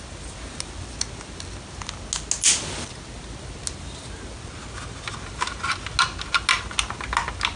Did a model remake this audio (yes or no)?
no